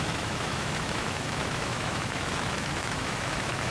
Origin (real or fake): fake